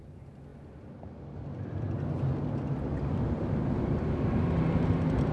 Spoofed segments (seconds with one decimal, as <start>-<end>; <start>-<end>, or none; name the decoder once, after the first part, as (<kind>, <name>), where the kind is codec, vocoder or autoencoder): none